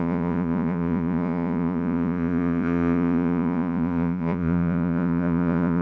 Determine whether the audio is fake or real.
fake